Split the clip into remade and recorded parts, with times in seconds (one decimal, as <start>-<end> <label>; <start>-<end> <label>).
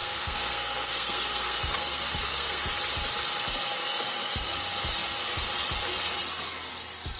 0.0-2.7 remade; 2.7-3.8 recorded; 3.8-4.5 remade; 4.5-7.2 recorded